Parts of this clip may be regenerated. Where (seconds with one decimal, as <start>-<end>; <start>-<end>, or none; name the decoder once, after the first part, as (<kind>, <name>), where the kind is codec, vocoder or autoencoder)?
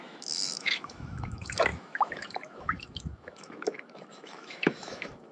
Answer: 0.0-5.3 (autoencoder, DAC-VAE)